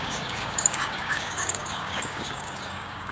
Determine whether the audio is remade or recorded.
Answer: remade